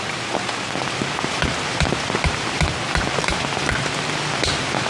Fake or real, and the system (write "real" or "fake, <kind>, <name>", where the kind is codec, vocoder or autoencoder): real